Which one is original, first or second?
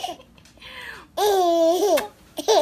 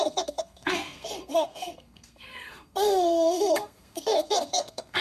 first